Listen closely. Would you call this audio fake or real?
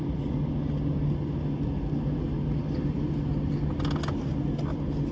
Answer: real